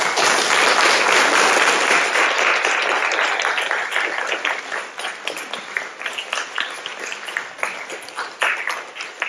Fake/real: real